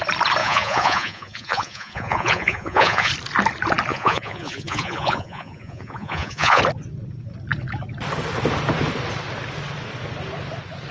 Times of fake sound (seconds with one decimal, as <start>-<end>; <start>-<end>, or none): 0.4-3.1; 3.9-6.6